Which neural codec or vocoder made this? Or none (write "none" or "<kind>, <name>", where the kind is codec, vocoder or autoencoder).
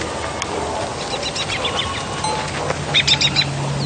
none